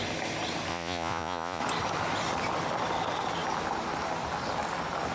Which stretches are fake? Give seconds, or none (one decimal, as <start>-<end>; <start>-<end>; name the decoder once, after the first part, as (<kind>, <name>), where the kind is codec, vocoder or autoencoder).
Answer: 0.7-1.6 (vocoder, Vocos)